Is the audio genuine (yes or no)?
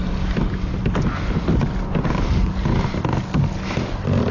yes